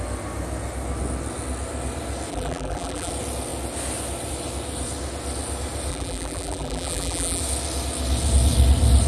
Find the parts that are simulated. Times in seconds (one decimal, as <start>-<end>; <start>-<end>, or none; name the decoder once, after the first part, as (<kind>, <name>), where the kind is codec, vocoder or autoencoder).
2.3-3.1 (vocoder, BigVGAN v2); 5.9-7.4

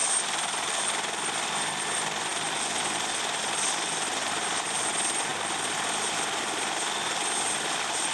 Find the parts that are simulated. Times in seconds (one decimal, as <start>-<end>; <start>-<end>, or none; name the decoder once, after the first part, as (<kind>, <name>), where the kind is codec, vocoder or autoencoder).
none